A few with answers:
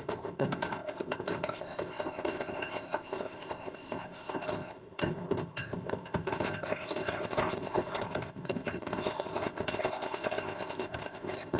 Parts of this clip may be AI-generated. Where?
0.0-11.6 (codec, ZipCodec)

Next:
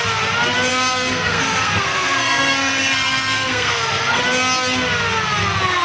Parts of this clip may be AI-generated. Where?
0.7-4.2 (codec, SNAC)

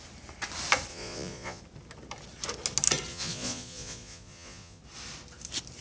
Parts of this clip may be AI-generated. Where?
0.9-1.6 (vocoder, Vocos); 3.1-4.8